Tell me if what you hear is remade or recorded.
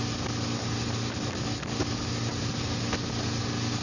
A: recorded